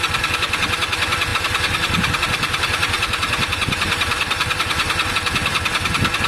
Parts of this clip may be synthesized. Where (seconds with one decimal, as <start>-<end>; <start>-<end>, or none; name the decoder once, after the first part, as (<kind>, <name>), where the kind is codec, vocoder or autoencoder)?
1.3-5.1 (vocoder, BigVGAN v2)